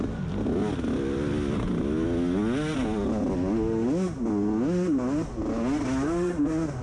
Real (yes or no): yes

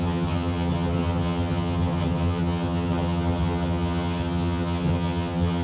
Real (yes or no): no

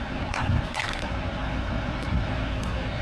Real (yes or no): no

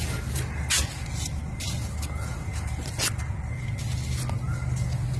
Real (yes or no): yes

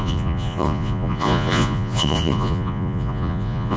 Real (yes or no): no